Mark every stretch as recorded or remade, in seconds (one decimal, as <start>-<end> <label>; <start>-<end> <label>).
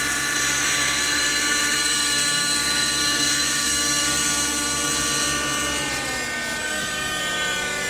0.0-0.4 recorded; 0.4-4.9 remade; 4.9-6.6 recorded; 6.6-7.2 remade; 7.2-7.9 recorded